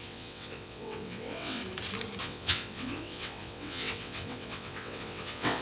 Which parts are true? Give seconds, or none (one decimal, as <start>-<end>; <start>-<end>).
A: 1.6-2.2